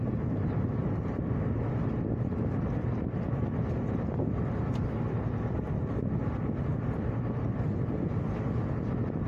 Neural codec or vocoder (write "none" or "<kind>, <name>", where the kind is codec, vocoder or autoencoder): none